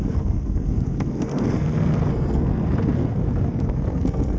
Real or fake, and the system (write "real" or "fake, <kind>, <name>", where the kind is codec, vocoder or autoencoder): fake, codec, SNAC